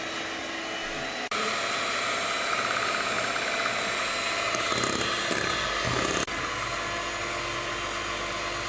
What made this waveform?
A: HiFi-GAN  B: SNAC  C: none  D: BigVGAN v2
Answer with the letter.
C